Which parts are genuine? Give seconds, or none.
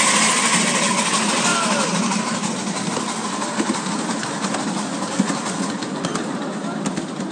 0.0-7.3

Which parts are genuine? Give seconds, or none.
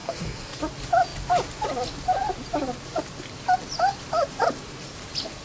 0.6-5.4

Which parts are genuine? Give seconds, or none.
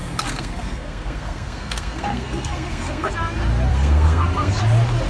3.1-3.7; 4.6-5.1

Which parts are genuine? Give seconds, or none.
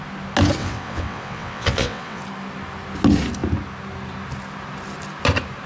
0.0-0.6; 2.2-5.7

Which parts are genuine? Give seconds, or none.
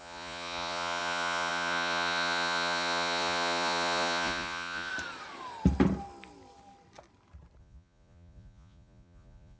4.9-7.6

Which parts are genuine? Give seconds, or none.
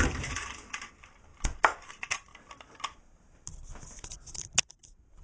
0.0-1.3; 1.9-2.3; 3.0-3.5; 4.4-5.2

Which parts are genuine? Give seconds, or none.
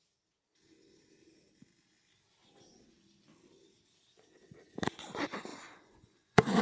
0.0-5.5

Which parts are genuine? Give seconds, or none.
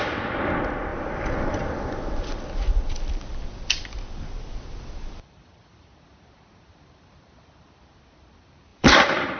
0.0-0.9; 5.9-8.7